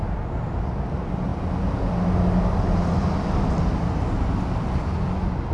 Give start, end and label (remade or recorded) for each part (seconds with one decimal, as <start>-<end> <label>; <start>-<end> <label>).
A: 0.0-5.5 recorded